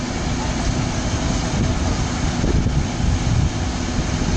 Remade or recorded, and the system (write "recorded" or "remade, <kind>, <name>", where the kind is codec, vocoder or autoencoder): recorded